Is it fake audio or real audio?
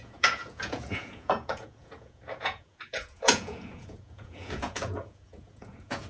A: fake